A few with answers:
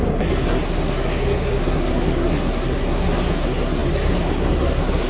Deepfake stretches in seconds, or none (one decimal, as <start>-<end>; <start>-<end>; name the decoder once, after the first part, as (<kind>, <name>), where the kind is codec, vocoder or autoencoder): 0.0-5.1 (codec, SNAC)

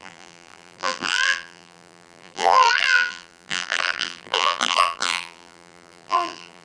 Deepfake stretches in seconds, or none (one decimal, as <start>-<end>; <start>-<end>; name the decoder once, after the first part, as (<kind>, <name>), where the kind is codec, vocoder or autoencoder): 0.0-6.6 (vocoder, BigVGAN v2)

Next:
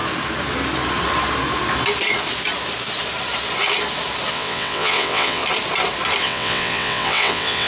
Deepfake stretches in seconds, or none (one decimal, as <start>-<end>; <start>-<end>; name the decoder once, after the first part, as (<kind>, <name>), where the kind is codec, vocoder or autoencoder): 4.3-5.4 (vocoder, WaveNeXt); 6.2-7.7